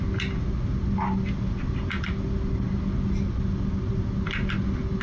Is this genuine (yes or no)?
yes